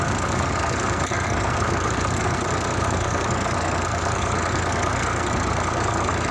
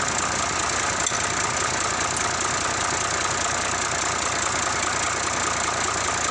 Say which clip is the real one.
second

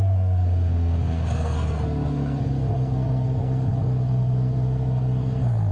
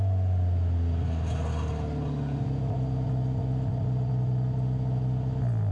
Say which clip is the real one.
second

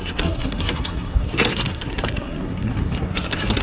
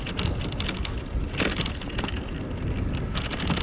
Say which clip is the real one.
second